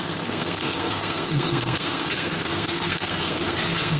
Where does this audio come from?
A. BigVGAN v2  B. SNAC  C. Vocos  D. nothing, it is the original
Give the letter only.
B